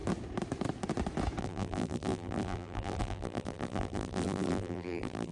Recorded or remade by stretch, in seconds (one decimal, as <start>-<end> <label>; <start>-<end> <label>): 0.0-1.4 recorded; 1.4-5.3 remade